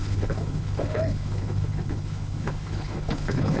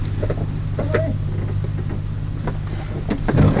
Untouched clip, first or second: second